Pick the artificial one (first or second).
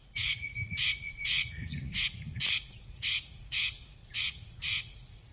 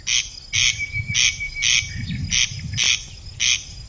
first